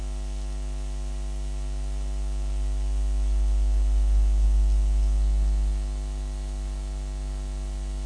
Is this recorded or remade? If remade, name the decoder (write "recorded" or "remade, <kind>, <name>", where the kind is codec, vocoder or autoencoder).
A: recorded